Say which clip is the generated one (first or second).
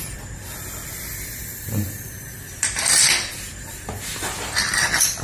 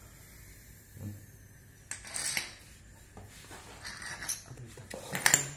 first